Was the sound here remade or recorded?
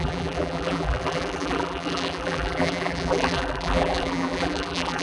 remade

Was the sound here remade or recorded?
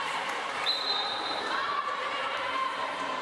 remade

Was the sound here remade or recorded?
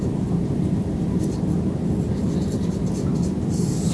recorded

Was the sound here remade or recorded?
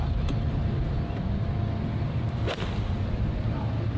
remade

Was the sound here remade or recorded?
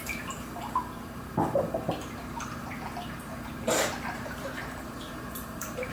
remade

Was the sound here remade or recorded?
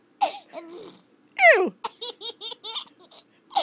recorded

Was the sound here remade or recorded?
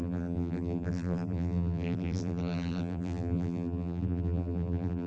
remade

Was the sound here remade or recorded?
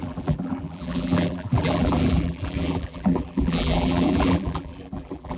remade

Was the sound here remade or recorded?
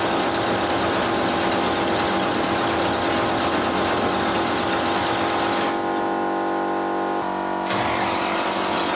recorded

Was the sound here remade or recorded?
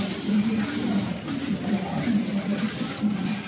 remade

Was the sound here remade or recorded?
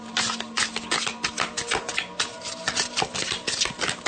recorded